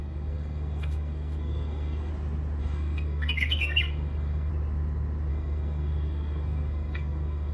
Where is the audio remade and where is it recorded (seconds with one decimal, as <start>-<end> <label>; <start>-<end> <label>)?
0.0-2.1 remade; 2.1-2.6 recorded; 2.6-4.5 remade; 4.5-5.3 recorded; 5.3-7.5 remade